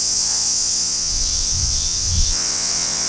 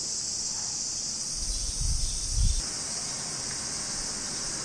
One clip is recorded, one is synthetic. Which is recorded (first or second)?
second